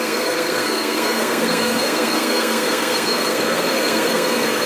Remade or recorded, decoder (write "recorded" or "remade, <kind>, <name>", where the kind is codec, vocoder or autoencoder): remade, codec, SNAC